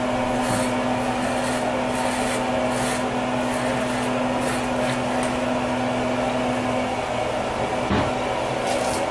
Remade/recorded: recorded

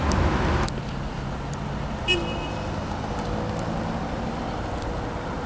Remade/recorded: recorded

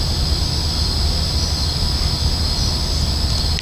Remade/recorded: recorded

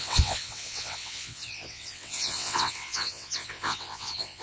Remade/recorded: remade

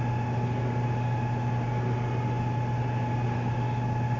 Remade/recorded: recorded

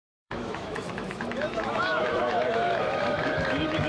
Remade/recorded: remade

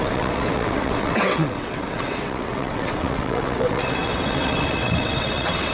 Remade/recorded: remade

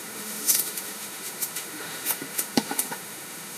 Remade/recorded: remade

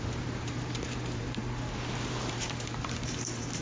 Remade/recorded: remade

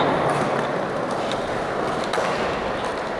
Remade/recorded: recorded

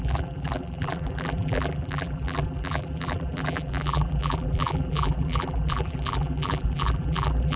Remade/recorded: remade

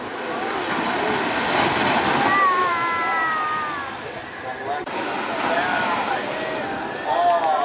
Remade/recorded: recorded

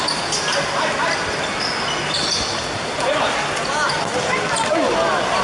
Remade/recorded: recorded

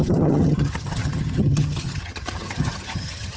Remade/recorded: remade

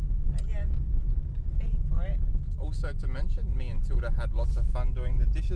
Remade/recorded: recorded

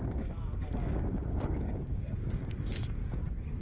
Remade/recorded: remade